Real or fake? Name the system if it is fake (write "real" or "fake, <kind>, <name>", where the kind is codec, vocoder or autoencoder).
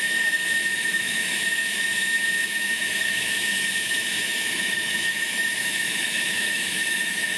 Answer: fake, autoencoder, DAC-VAE